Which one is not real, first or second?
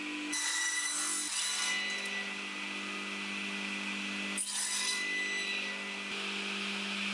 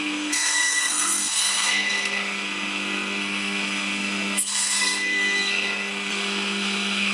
second